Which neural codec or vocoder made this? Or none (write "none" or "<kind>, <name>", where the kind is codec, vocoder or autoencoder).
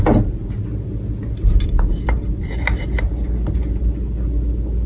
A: none